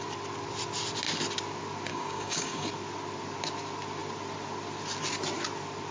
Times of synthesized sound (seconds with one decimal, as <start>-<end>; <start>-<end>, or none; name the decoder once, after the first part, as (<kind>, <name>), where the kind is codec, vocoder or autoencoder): 1.9-2.7 (codec, DAC)